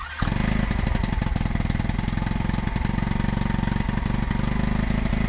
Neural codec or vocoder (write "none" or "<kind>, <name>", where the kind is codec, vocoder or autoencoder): none